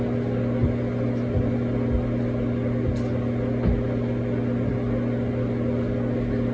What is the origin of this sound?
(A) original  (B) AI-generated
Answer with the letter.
A